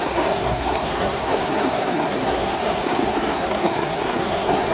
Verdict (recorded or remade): remade